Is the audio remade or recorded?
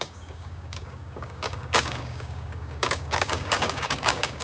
remade